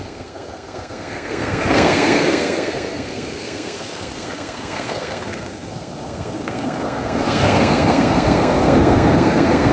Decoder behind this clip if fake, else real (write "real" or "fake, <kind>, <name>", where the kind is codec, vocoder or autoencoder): fake, codec, SNAC